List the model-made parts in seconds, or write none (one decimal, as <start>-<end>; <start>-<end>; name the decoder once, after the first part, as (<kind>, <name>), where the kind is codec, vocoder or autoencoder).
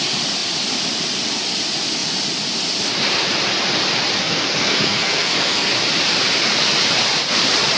4.2-5.7 (codec, SNAC)